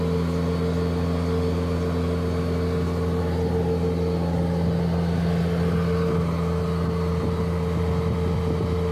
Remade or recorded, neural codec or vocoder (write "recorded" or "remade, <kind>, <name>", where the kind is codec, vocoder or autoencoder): recorded